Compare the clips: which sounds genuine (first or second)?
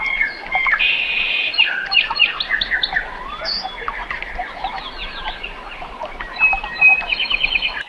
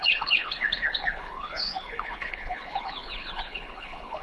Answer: first